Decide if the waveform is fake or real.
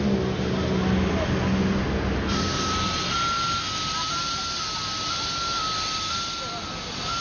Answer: real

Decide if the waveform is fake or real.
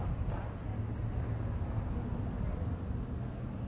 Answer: real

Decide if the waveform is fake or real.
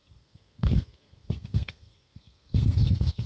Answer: fake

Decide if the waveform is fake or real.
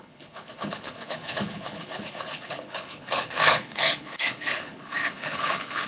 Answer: fake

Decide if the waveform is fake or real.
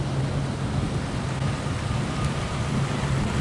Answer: real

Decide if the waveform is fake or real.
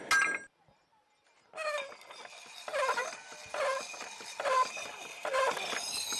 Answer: real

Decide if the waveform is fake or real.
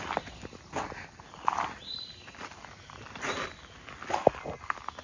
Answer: real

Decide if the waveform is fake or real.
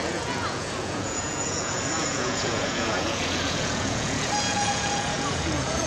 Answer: fake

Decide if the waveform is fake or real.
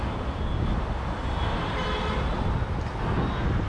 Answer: real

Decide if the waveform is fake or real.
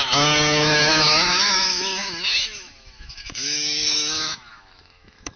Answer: fake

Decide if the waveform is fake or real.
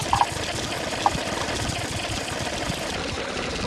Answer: real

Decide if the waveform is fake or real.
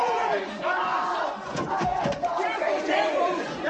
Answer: fake